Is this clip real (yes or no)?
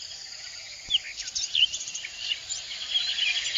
no